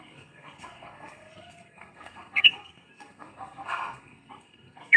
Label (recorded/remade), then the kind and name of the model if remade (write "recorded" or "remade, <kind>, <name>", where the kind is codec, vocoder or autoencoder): remade, codec, SNAC